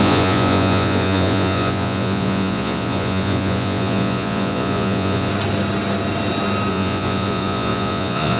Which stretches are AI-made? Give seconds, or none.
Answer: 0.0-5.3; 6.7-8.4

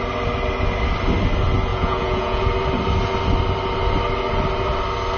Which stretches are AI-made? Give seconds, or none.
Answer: 1.7-2.4